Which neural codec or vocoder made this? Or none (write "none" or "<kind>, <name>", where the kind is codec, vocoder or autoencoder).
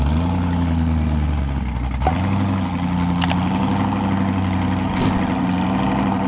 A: none